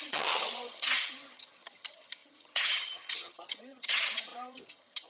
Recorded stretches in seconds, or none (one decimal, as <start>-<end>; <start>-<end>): none